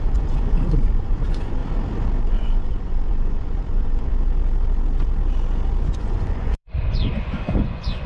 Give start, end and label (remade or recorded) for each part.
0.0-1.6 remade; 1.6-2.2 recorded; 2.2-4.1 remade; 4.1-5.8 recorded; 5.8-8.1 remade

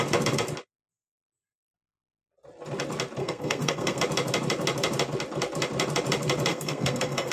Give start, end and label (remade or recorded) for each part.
0.0-3.2 recorded; 3.2-4.0 remade; 4.0-6.5 recorded; 6.5-7.3 remade

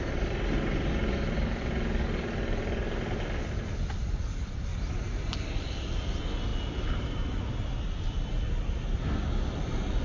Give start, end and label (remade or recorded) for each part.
0.0-4.7 recorded; 4.7-5.7 remade; 5.7-10.0 recorded

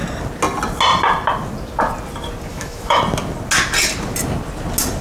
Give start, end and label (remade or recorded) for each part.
0.0-2.5 recorded; 2.5-3.0 remade; 3.0-5.0 recorded

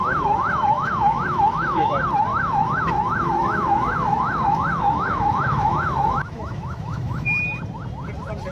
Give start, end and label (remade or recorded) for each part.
0.0-1.9 remade; 1.9-2.3 recorded; 2.3-7.4 remade; 7.4-8.5 recorded

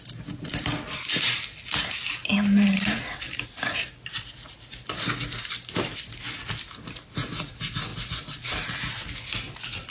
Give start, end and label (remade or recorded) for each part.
0.0-9.9 recorded